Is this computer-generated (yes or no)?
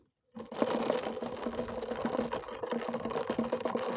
no